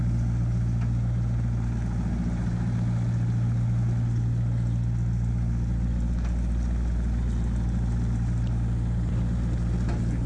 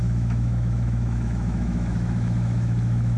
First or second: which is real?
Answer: first